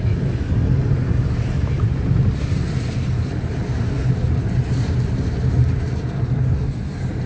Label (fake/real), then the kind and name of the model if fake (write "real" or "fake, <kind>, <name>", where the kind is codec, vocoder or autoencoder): real